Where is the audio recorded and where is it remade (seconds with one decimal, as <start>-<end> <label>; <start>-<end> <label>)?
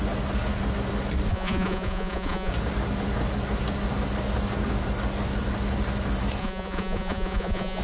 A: 0.0-1.3 recorded; 1.3-2.5 remade; 2.5-6.4 recorded; 6.4-7.8 remade